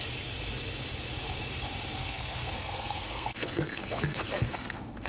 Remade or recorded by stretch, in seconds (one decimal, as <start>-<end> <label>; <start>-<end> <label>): 0.0-2.0 recorded; 2.0-5.1 remade